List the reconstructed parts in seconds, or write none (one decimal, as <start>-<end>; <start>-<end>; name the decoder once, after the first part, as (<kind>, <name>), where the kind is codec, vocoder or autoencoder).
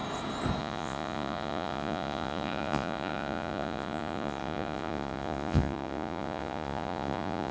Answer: 0.6-7.5 (vocoder, Vocos)